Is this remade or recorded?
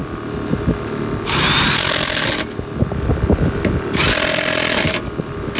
recorded